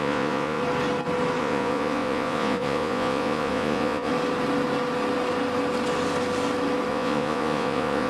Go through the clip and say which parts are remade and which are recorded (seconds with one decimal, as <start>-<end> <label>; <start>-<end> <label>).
0.0-0.6 remade; 0.6-1.4 recorded; 1.4-4.1 remade; 4.1-6.9 recorded; 6.9-8.1 remade